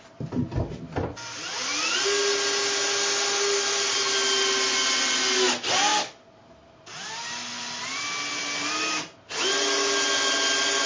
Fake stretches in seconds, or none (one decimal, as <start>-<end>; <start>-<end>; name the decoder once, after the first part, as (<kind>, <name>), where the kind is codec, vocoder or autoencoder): none